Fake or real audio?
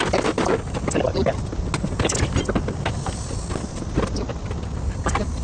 real